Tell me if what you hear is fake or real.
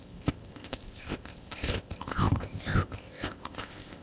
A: fake